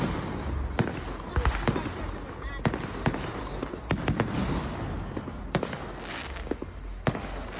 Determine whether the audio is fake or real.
real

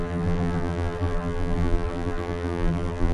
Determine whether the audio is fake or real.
fake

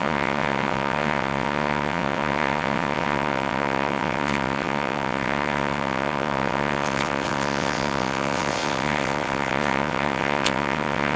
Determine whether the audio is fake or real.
fake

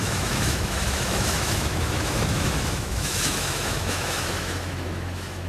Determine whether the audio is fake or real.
fake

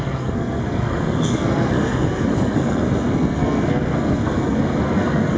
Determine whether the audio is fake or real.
fake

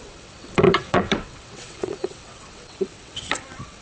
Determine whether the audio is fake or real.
fake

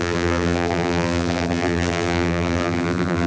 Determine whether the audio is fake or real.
fake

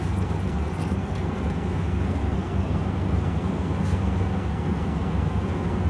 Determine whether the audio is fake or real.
fake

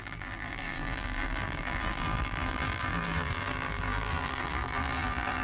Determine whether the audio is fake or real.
fake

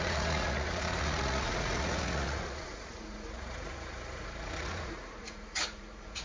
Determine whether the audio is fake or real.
fake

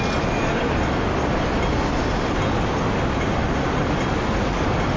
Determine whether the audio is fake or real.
real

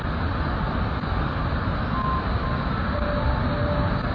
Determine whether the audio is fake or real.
real